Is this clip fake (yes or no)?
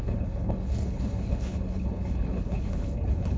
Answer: yes